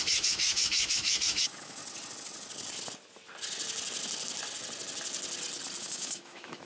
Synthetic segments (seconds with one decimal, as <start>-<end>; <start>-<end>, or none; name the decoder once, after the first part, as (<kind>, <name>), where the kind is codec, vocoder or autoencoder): 0.0-1.8 (autoencoder, DAC-VAE); 5.8-6.7